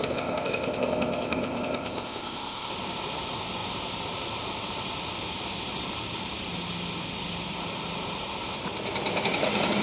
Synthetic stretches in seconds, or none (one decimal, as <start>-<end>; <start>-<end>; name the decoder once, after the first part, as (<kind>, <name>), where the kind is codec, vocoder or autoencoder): 0.0-2.7 (codec, ZipCodec)